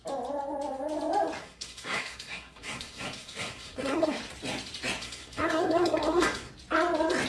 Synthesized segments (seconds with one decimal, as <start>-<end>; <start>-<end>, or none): 1.4-4.2; 5.0-6.5